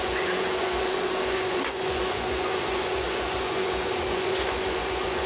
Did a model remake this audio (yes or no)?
yes